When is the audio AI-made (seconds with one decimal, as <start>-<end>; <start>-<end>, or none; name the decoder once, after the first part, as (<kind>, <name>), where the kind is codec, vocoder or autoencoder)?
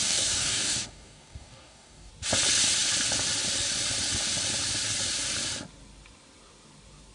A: 0.0-2.1 (codec, DAC)